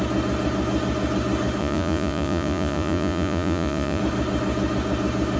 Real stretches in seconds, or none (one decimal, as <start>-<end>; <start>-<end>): 0.0-1.6; 4.0-5.4